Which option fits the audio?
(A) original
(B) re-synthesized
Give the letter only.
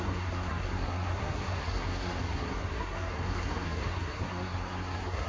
B